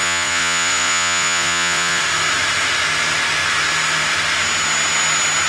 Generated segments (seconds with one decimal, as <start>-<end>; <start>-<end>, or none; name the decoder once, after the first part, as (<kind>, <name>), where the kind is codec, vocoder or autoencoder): 0.0-2.0 (vocoder, Vocos)